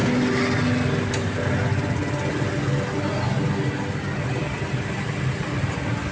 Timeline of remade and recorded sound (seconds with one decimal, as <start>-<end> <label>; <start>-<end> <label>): 0.0-6.1 recorded